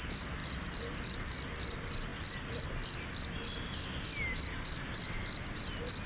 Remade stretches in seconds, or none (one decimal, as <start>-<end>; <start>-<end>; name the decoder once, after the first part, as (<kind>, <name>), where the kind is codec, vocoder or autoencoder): none